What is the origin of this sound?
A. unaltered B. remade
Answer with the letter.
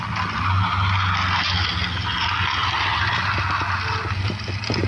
A